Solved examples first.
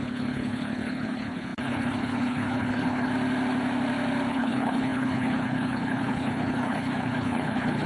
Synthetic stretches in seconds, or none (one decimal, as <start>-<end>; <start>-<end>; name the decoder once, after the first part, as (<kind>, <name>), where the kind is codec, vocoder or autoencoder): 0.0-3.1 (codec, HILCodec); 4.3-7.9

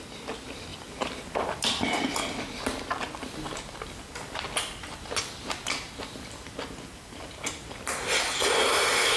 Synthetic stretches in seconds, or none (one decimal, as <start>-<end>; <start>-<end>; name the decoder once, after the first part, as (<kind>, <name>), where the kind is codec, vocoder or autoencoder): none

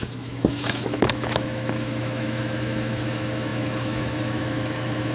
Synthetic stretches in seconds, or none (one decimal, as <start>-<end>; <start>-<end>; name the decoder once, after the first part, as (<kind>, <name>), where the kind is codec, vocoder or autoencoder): 0.0-5.1 (autoencoder, DAC-VAE)

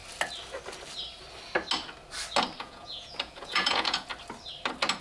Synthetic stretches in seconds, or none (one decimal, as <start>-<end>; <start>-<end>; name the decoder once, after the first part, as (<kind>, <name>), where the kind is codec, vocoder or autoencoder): 2.6-4.1 (vocoder, Vocos)

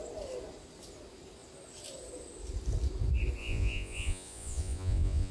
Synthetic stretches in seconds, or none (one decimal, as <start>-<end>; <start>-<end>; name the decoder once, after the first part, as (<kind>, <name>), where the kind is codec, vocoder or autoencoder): 3.4-5.3 (vocoder, Vocos)

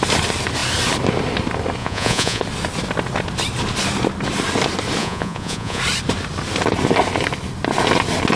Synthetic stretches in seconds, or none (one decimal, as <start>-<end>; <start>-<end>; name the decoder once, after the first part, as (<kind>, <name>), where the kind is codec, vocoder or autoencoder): 1.8-2.4 (vocoder, Vocos); 5.0-5.8